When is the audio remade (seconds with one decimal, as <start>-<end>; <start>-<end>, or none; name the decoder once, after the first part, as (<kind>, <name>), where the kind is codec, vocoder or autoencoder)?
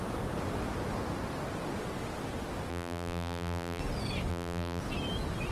2.7-3.8 (vocoder, BigVGAN v2); 4.3-4.8